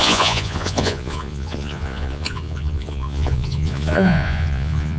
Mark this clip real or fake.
fake